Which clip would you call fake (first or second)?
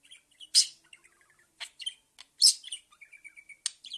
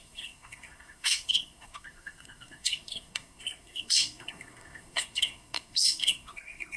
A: second